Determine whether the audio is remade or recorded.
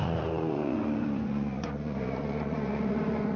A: remade